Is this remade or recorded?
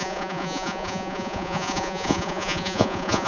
remade